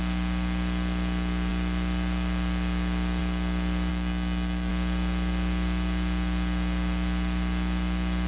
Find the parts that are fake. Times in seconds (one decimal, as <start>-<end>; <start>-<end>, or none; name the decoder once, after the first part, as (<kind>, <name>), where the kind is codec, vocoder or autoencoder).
3.9-4.7 (autoencoder, DAC-VAE)